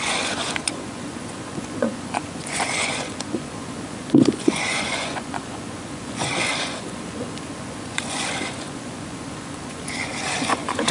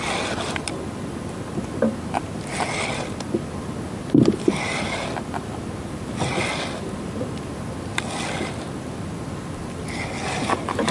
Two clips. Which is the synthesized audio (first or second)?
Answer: first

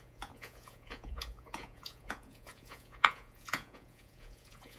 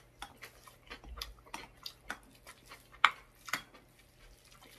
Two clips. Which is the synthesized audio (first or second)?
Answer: first